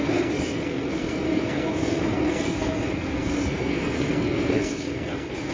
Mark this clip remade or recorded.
remade